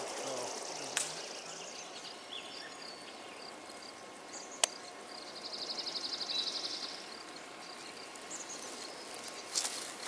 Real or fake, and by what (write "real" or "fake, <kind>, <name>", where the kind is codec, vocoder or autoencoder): real